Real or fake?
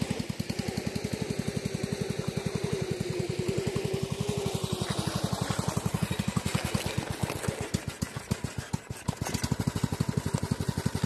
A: real